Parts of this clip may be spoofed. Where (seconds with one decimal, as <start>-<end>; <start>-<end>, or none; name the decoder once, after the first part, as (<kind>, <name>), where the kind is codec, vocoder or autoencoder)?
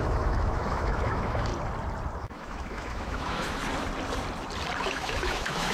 0.0-1.5 (autoencoder, DAC-VAE); 2.2-3.6; 4.8-5.7